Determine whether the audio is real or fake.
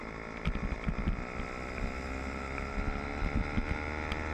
real